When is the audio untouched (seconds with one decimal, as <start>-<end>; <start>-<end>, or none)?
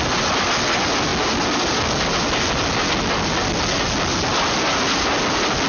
0.0-5.7